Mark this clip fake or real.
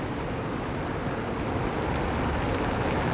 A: real